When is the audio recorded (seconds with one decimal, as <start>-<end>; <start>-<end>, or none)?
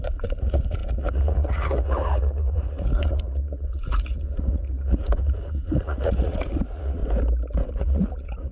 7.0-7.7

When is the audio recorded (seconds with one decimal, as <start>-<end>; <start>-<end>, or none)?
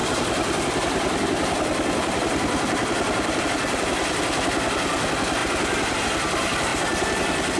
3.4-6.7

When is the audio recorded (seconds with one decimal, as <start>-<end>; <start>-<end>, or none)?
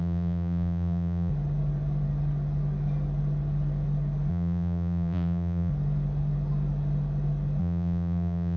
1.3-4.3; 5.7-7.6